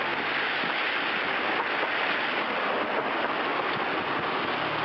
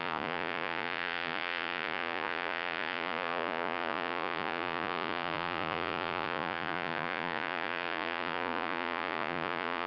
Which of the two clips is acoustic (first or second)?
first